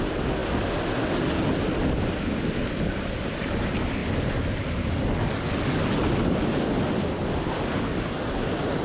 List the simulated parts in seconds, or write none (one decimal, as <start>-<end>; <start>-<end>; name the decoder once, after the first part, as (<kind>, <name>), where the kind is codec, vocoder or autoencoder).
none